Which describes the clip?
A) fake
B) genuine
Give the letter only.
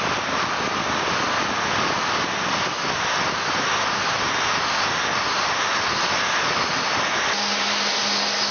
B